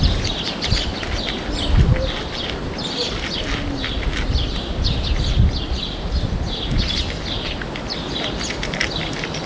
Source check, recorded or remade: recorded